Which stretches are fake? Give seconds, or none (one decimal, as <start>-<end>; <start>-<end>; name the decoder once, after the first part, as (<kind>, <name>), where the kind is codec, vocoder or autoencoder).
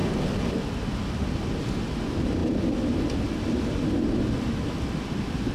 none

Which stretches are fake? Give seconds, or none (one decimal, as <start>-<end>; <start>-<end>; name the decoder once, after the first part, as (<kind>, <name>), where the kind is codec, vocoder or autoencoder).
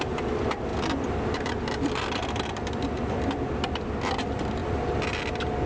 none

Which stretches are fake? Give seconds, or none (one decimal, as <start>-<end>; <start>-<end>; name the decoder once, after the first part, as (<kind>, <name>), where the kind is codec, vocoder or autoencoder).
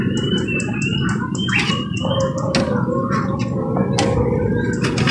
none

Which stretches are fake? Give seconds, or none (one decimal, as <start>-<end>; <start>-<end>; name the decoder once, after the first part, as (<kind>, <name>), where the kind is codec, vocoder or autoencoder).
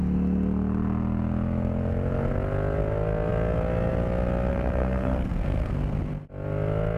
4.5-5.7 (codec, SNAC)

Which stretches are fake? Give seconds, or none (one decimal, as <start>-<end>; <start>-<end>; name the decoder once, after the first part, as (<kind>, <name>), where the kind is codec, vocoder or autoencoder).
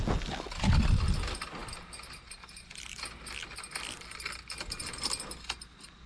none